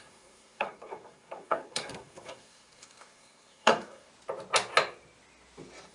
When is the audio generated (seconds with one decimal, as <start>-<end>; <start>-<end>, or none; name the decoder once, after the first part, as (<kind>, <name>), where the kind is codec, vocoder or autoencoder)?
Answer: 0.0-4.1 (codec, SNAC)